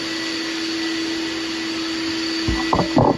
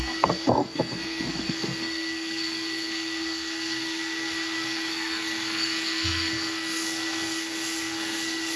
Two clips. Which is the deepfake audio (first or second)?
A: second